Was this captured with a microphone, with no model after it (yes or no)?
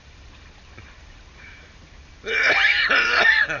no